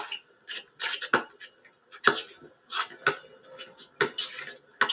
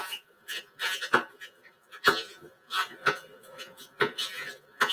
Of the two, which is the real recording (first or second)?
first